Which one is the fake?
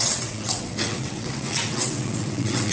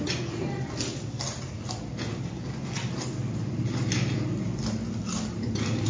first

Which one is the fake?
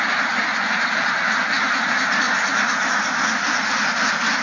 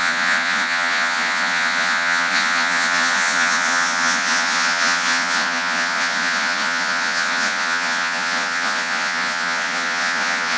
second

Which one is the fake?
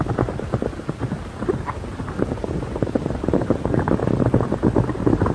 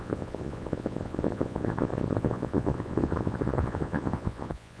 second